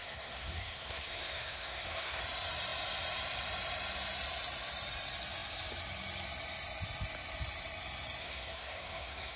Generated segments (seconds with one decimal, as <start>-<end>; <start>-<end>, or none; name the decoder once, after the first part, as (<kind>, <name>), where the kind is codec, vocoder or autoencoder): 0.0-2.2 (codec, SNAC); 8.2-9.4